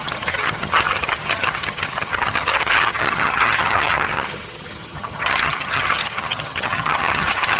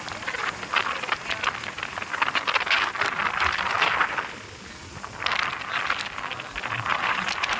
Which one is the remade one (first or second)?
first